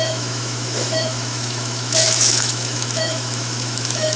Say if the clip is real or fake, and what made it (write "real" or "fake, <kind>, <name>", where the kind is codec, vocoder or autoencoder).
fake, autoencoder, DAC-VAE